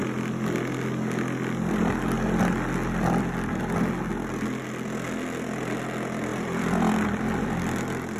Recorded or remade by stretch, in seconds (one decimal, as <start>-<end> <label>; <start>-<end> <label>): 0.0-8.2 recorded